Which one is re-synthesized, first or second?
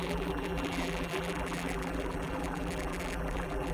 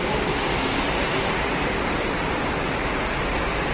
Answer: first